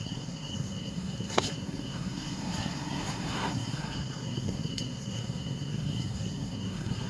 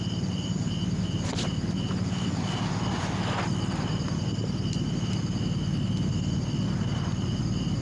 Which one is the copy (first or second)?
first